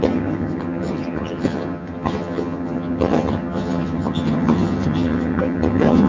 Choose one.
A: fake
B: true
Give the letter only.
A